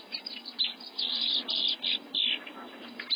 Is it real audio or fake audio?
real